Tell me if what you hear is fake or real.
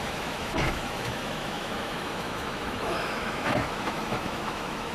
fake